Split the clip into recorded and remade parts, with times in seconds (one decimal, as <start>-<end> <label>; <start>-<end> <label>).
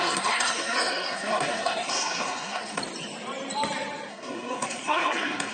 0.0-2.8 remade; 2.8-4.1 recorded; 4.1-5.5 remade